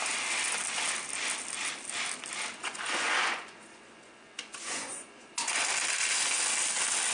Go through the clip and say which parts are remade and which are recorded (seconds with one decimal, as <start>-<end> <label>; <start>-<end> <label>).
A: 0.0-2.6 recorded; 2.6-5.6 remade; 5.6-7.1 recorded